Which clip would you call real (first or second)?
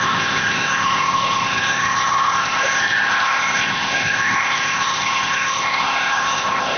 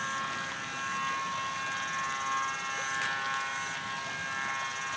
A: second